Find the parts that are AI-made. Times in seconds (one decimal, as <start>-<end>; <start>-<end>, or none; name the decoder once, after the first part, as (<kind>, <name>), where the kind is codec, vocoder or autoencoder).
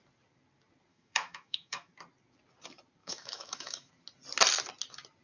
0.9-1.9 (autoencoder, DAC-VAE); 3.0-3.9